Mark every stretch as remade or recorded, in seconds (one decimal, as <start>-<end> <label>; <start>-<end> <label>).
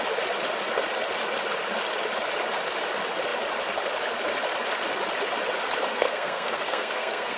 0.0-5.9 recorded; 5.9-7.4 remade